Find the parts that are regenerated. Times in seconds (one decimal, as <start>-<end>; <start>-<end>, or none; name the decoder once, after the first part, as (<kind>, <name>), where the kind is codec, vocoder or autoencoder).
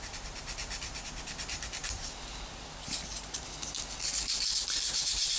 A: none